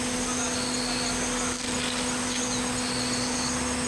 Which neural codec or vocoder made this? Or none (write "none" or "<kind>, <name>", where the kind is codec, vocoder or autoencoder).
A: none